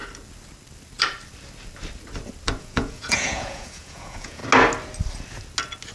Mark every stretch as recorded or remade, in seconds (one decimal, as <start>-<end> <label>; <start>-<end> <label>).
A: 0.0-2.6 recorded; 2.6-4.4 remade; 4.4-5.9 recorded

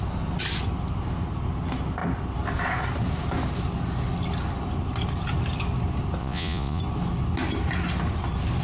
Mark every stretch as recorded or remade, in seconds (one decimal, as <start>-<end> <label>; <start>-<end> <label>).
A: 0.0-6.2 recorded; 6.2-6.8 remade; 6.8-8.6 recorded

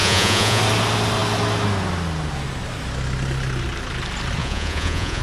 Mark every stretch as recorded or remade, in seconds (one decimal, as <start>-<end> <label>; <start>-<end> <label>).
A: 0.0-0.6 remade; 0.6-4.4 recorded; 4.4-5.2 remade